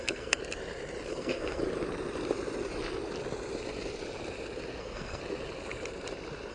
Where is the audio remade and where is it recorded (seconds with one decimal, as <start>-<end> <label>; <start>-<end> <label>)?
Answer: 0.0-0.4 remade; 0.4-1.1 recorded; 1.1-1.6 remade; 1.6-4.8 recorded; 4.8-5.2 remade; 5.2-6.5 recorded